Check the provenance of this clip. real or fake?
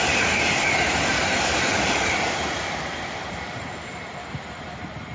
fake